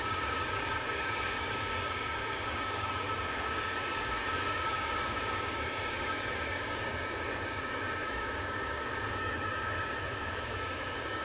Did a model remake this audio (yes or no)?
yes